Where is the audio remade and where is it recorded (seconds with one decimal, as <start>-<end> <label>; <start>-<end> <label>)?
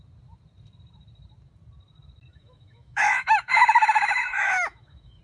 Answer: 0.0-2.3 recorded; 2.3-5.2 remade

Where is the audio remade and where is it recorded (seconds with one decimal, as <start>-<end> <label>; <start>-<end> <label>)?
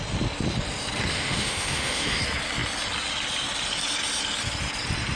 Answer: 0.0-1.1 recorded; 1.1-2.2 remade; 2.2-5.2 recorded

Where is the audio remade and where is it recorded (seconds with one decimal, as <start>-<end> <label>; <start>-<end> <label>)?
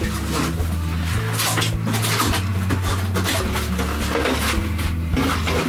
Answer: 0.0-5.7 recorded